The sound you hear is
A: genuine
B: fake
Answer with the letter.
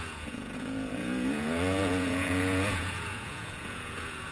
B